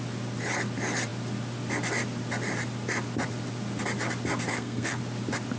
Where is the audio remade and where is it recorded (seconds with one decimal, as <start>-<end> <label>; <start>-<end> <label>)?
0.0-4.5 recorded; 4.5-5.0 remade; 5.0-5.6 recorded